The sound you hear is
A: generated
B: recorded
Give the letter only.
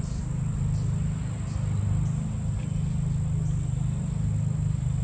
B